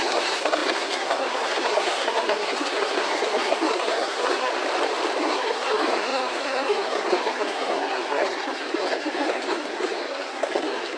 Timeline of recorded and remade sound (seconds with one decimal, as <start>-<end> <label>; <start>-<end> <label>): 0.0-4.5 remade; 4.5-5.2 recorded; 5.2-11.0 remade